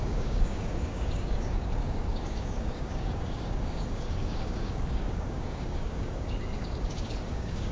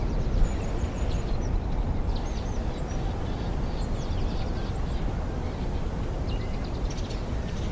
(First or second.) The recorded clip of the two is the second